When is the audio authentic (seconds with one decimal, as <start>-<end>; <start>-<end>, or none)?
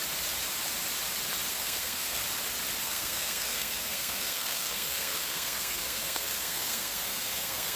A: 0.0-1.5; 2.2-2.8